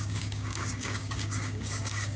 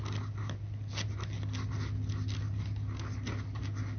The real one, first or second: second